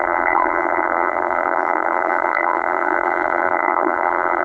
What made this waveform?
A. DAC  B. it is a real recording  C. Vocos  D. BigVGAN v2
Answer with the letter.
D